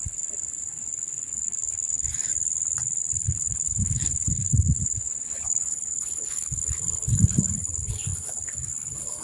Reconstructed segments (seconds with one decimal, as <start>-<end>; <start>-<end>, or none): 0.0-2.3; 3.0-9.2